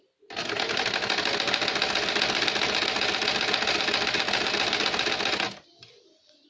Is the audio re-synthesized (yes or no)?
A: no